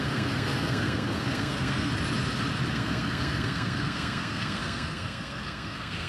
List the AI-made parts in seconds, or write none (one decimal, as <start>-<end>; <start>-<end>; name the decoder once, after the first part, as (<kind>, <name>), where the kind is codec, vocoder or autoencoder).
0.0-1.9 (codec, SNAC); 2.7-6.1